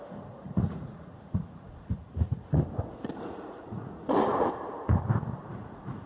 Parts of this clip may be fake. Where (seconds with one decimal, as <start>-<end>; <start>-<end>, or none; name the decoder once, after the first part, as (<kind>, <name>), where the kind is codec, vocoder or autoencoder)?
0.0-2.1 (vocoder, Vocos); 2.8-4.9; 5.5-6.1